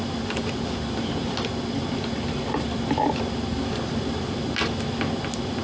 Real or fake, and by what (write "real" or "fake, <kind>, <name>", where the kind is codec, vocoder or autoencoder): real